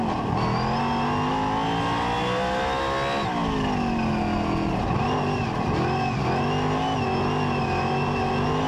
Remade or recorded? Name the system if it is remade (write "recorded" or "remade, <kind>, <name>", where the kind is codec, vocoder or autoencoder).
recorded